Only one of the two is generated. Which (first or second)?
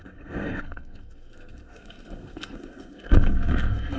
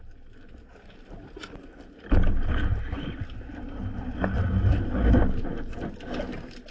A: first